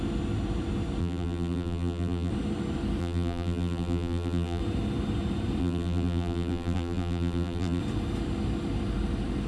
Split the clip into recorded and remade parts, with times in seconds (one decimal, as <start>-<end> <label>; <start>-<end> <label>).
0.0-1.0 recorded; 1.0-2.3 remade; 2.3-3.0 recorded; 3.0-4.6 remade; 4.6-5.6 recorded; 5.6-7.8 remade; 7.8-9.5 recorded